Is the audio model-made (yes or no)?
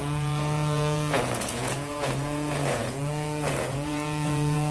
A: yes